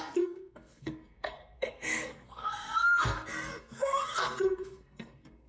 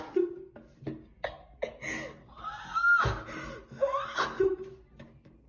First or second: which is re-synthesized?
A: first